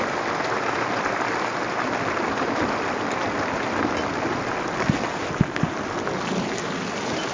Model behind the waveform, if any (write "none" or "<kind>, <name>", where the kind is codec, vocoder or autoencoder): none